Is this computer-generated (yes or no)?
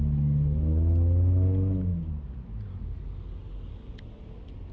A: no